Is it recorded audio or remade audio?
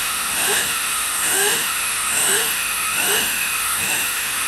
remade